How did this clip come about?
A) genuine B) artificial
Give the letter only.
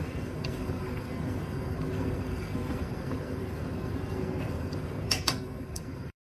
B